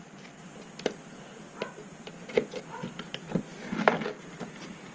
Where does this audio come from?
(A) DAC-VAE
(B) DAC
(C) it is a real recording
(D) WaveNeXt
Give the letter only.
C